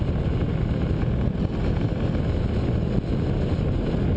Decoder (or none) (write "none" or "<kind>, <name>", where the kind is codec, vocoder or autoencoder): none